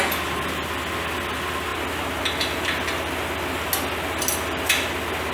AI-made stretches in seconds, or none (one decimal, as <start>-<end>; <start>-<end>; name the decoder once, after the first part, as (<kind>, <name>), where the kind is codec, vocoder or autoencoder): none